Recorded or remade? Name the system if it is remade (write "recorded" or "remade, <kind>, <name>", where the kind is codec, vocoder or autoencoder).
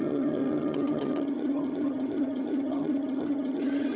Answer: remade, vocoder, HiFi-GAN